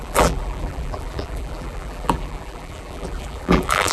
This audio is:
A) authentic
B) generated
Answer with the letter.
B